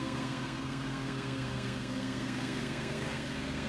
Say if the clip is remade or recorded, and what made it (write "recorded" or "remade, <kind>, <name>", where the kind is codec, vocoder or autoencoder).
remade, codec, SNAC